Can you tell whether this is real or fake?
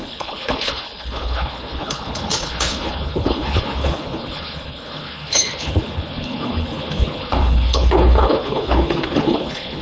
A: fake